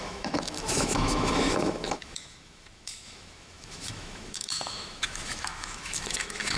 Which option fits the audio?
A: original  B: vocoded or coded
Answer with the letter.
B